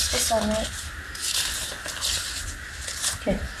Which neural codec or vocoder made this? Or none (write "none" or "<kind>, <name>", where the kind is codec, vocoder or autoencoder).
none